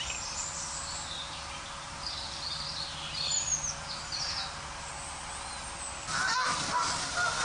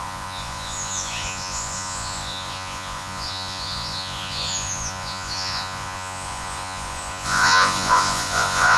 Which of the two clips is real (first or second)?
first